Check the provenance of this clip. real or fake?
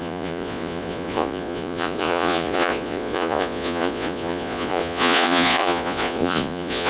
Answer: fake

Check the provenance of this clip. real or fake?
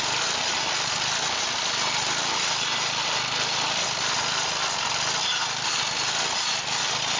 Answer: real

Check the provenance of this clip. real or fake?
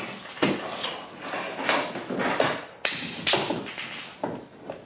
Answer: real